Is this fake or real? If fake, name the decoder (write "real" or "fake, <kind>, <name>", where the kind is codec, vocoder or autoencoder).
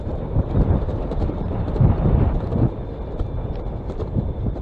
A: fake, vocoder, BigVGAN v2